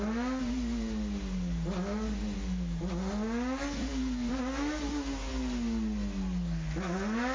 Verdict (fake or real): real